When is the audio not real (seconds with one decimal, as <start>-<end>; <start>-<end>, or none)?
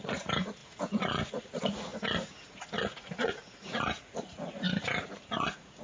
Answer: 0.0-5.8